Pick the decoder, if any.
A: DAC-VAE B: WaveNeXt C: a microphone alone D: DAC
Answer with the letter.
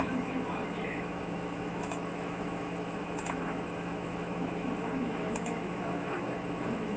A